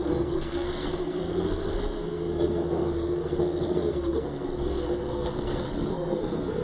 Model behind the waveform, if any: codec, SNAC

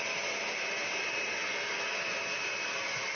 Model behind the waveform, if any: none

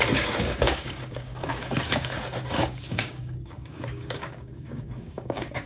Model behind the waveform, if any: codec, DAC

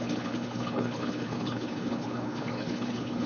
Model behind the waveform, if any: codec, HILCodec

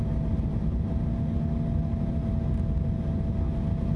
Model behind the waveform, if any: none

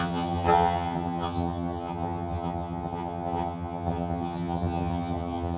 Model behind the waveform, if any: vocoder, HiFi-GAN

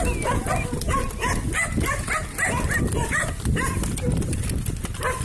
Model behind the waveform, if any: none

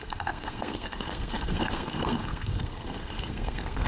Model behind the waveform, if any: codec, SNAC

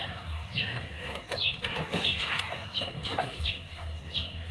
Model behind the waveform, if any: codec, SNAC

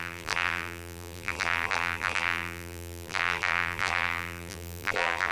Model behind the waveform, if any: vocoder, BigVGAN v2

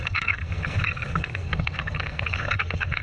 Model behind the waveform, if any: codec, SNAC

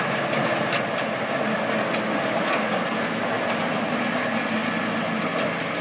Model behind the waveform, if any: none